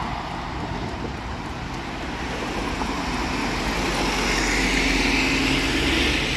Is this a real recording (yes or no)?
yes